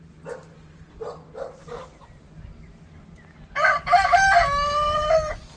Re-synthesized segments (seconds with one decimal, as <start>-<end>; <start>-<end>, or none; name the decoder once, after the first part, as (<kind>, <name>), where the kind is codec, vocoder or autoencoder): none